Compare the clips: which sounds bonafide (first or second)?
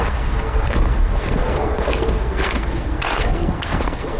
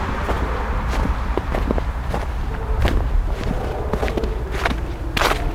second